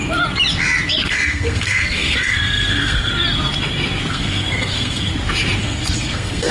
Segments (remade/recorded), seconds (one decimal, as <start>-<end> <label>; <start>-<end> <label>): 0.0-1.1 recorded; 1.1-3.1 remade; 3.1-4.1 recorded; 4.1-5.1 remade; 5.1-5.6 recorded; 5.6-6.5 remade